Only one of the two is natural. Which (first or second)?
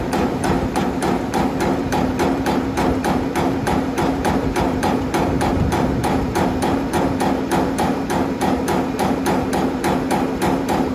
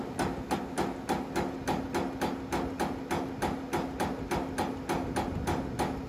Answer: second